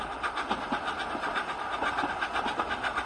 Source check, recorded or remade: recorded